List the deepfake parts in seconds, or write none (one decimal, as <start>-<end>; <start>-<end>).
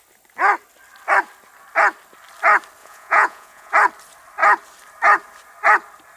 2.8-3.7